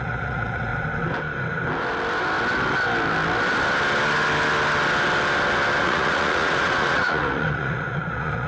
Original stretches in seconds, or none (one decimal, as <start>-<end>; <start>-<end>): 0.7-5.8